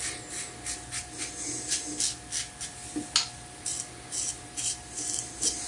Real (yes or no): yes